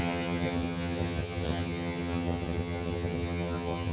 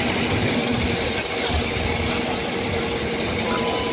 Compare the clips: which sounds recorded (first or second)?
second